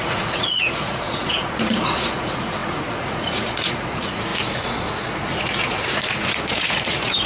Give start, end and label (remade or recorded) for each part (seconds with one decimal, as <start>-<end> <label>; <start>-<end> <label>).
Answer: 0.0-7.3 remade